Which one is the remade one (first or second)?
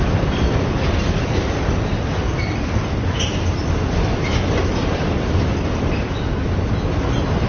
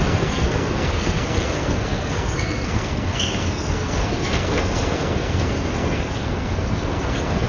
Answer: second